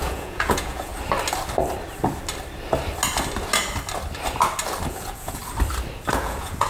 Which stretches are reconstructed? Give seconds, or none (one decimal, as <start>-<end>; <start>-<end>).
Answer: 0.0-0.9; 4.9-5.4; 6.1-6.7